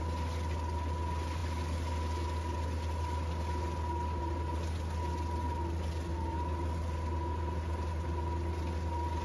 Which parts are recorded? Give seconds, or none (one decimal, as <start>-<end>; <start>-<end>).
0.0-9.2